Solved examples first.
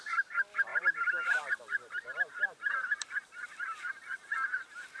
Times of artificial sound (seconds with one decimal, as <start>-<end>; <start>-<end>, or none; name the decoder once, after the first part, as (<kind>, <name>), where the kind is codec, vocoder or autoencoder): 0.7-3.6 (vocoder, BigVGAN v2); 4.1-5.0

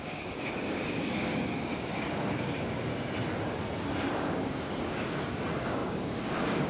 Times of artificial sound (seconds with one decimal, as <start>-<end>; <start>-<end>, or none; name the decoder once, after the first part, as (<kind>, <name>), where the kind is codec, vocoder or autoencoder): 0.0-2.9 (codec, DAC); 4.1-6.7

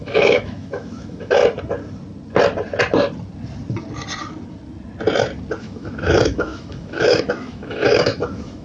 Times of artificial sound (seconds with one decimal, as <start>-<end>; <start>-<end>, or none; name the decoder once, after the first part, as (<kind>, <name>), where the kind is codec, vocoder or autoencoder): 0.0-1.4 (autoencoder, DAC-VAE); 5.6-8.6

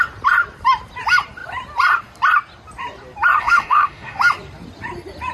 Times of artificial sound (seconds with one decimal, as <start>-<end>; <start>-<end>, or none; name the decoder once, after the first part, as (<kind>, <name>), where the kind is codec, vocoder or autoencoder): 3.4-4.2 (autoencoder, DAC-VAE)

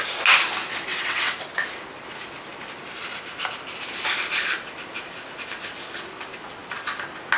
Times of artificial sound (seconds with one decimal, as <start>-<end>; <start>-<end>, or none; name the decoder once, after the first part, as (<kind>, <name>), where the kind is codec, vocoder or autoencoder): 0.9-1.7 (vocoder, WaveNeXt)

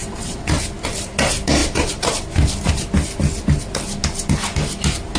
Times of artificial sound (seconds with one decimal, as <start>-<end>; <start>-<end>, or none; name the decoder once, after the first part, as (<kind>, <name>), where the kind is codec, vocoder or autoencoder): 0.0-0.6 (vocoder, WaveNeXt)

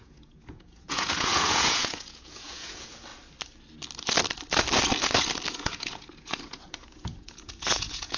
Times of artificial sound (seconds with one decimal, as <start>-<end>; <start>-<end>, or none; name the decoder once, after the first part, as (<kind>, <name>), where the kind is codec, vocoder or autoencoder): 0.0-3.1 (vocoder, Vocos); 5.5-8.2

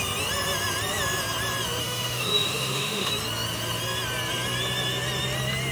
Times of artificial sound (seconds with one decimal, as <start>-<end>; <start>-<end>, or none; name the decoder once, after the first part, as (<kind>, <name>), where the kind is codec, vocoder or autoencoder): 1.8-3.1 (autoencoder, DAC-VAE)